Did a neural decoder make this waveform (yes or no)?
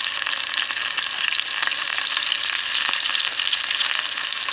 no